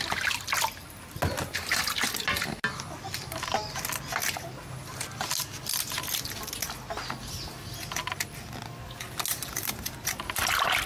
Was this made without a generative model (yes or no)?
yes